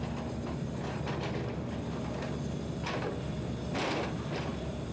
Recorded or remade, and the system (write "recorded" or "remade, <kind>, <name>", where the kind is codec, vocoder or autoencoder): recorded